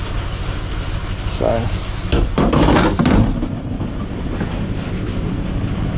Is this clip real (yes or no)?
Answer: yes